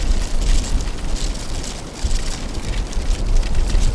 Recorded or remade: recorded